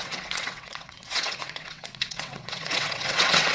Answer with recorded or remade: remade